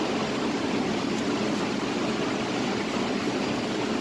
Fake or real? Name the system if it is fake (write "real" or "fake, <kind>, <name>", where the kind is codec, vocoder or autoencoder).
real